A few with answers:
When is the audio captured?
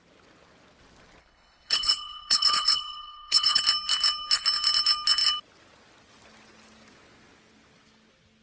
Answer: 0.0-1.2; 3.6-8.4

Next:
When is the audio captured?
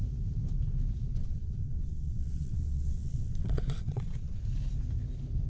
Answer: 0.0-1.1; 4.4-5.5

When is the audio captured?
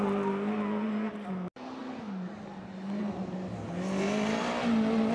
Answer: 0.0-5.1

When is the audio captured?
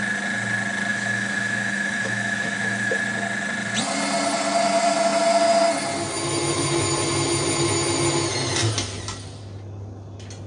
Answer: 0.0-0.9; 3.0-10.5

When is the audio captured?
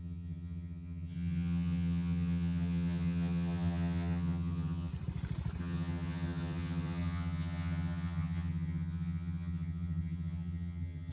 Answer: 4.9-5.6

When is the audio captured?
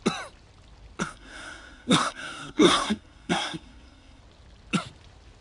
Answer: 0.0-1.0; 4.2-5.4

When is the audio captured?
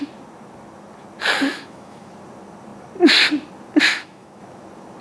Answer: 0.0-1.5; 2.1-3.9; 4.4-5.0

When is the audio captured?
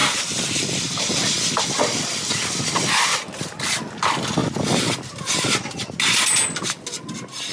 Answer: 0.0-7.5